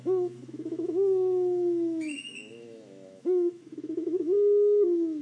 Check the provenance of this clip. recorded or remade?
remade